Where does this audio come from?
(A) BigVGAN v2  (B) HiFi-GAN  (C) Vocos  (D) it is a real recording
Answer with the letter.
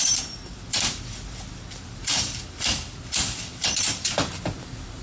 A